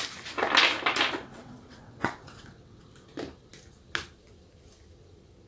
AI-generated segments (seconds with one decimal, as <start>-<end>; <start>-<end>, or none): 1.3-2.8